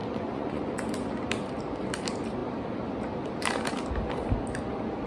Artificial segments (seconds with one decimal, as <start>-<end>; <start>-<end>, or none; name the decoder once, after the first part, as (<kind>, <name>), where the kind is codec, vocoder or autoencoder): 0.0-0.9 (vocoder, Vocos)